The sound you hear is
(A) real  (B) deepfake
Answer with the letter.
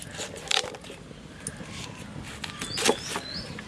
A